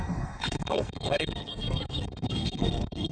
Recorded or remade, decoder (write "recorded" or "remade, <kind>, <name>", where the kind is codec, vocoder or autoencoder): remade, codec, SNAC